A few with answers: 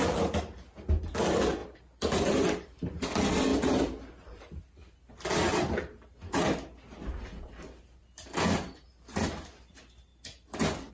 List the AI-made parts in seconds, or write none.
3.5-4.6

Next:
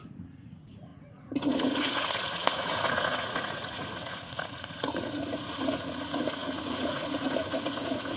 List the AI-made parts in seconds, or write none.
0.0-8.2

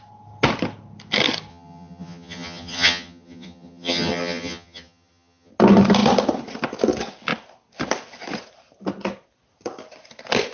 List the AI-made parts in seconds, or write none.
1.5-5.5